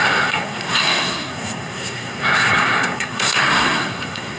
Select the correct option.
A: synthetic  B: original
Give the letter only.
A